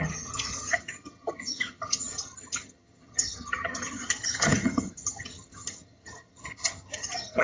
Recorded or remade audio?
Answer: remade